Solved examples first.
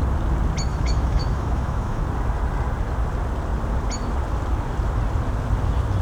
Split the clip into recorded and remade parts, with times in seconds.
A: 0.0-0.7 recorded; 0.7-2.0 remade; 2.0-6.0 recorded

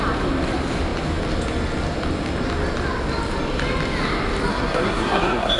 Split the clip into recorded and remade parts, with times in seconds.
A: 0.0-4.5 recorded; 4.5-5.6 remade

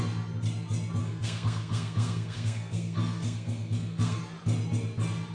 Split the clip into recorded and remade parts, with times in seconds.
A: 0.0-1.0 recorded; 1.0-4.2 remade; 4.2-5.3 recorded

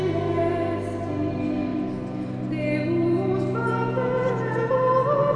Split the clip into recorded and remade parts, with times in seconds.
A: 0.0-5.4 recorded